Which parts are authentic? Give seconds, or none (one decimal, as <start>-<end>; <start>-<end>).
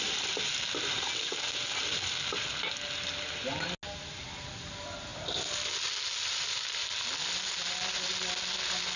0.0-9.0